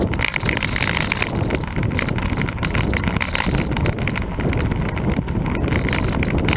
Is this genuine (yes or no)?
yes